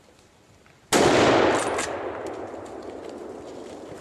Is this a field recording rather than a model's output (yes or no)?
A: yes